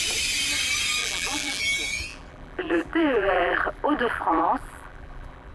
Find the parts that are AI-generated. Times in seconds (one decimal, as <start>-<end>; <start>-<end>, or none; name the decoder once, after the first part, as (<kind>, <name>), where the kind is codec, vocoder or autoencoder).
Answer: 1.0-1.6 (vocoder, BigVGAN v2); 2.1-5.5